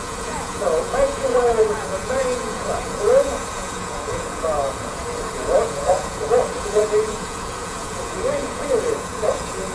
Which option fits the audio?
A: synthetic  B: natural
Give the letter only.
A